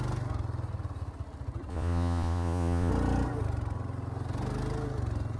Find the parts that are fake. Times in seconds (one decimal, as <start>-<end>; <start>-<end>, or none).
1.7-2.9